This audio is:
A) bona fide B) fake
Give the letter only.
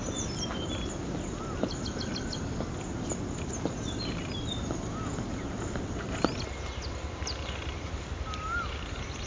A